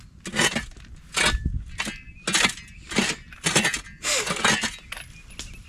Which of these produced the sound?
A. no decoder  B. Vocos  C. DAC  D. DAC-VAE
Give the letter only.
A